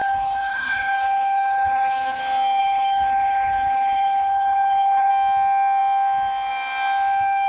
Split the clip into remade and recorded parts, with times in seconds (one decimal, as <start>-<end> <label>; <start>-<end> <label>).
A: 0.0-2.2 remade; 2.2-2.6 recorded; 2.6-5.1 remade; 5.1-7.5 recorded